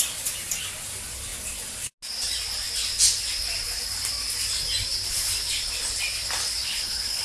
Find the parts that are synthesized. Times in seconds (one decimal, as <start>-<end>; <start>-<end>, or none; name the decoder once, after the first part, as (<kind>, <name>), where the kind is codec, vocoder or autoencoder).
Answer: 6.6-7.2 (codec, HILCodec)